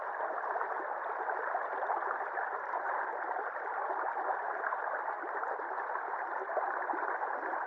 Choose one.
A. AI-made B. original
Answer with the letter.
B